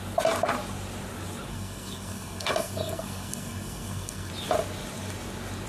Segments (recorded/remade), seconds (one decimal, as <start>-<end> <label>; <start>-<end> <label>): 0.0-1.5 recorded; 1.5-4.3 remade; 4.3-5.7 recorded